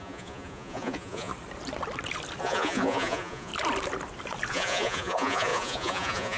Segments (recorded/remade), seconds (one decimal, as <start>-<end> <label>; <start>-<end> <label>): 0.0-1.3 remade; 1.3-2.4 recorded; 2.4-3.5 remade; 3.5-4.5 recorded; 4.5-6.4 remade